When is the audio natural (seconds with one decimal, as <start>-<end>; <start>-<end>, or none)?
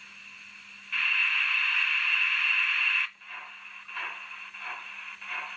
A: 0.0-5.6